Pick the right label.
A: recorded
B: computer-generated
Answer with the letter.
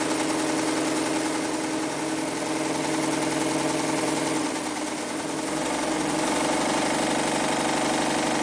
A